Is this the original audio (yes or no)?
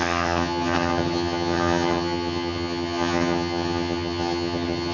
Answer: no